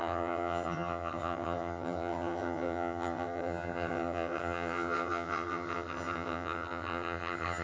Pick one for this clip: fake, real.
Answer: fake